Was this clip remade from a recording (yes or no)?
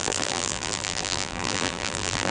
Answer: yes